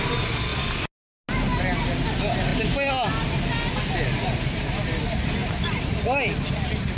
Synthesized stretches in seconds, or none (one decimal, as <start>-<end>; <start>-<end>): none